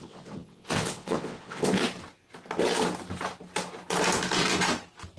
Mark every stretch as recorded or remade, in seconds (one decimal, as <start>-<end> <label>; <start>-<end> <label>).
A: 0.0-1.8 remade; 1.8-5.2 recorded